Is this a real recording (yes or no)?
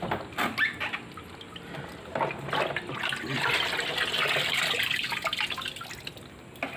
yes